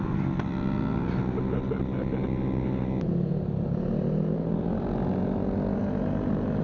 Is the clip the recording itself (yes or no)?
yes